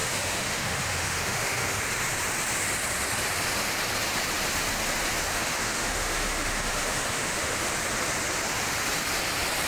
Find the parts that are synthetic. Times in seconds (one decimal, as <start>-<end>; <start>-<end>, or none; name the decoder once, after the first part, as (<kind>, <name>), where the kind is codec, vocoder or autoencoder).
0.0-1.8 (autoencoder, DAC-VAE); 5.3-7.7